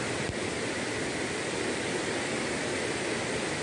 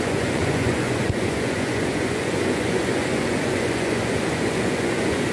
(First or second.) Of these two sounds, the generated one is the second